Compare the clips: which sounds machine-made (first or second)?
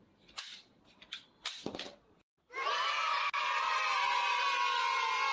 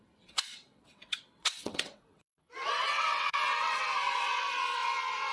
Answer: second